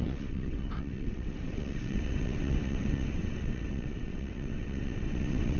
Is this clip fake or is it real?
fake